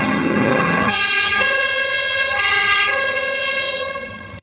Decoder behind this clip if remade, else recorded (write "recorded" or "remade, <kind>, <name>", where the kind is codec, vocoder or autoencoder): remade, vocoder, HiFi-GAN